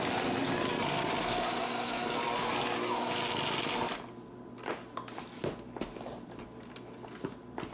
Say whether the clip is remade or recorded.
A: recorded